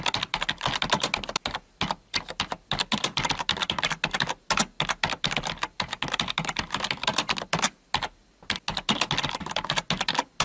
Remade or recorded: recorded